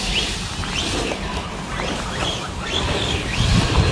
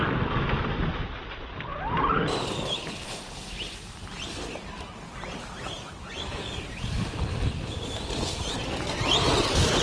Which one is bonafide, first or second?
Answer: second